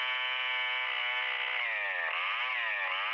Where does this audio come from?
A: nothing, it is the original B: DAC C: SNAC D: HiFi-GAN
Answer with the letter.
A